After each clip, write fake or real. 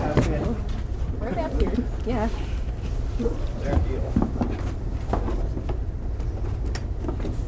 real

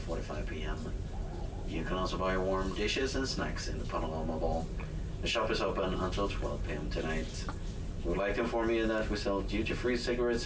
real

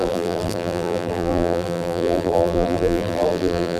fake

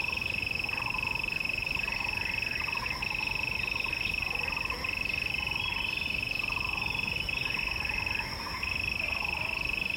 real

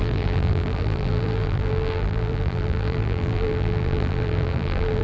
fake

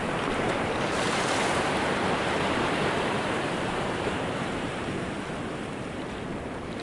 fake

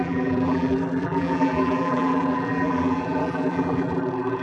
fake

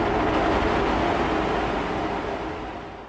real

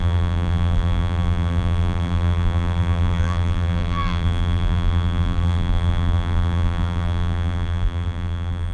fake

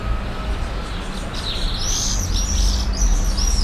real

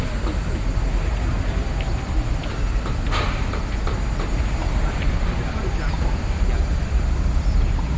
real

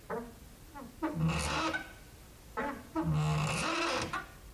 real